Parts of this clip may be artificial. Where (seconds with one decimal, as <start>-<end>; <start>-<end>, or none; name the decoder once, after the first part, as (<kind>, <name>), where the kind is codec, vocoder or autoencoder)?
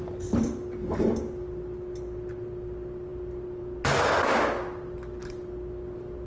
none